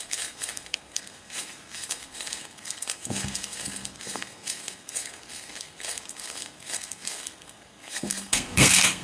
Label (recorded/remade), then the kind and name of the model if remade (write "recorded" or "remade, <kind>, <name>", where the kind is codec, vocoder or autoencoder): remade, codec, SNAC